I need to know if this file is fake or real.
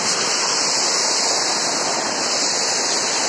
real